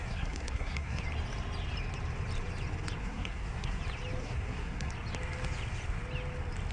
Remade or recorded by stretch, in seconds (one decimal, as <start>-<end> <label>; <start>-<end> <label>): 0.0-1.0 remade; 1.0-3.0 recorded; 3.0-3.8 remade; 3.8-4.2 recorded; 4.2-4.9 remade; 4.9-6.7 recorded